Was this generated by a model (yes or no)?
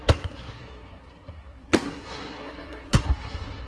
yes